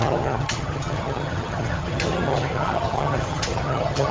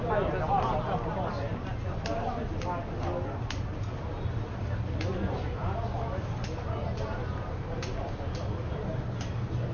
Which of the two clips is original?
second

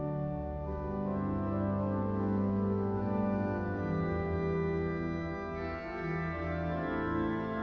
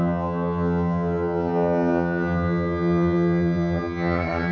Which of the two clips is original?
first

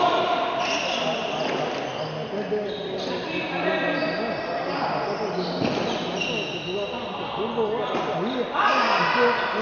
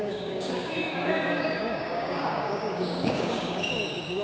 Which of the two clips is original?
first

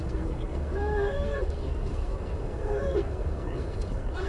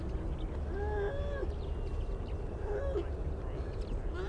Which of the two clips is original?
second